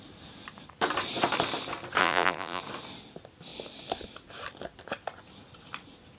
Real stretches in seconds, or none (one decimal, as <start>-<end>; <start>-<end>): 0.0-2.0; 2.6-6.2